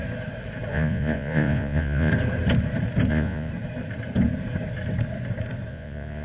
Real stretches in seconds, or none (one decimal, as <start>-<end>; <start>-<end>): 0.0-0.7; 2.1-3.1; 3.5-5.7